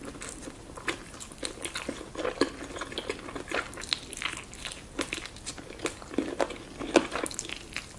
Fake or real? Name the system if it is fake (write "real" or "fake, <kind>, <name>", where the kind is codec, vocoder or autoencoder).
real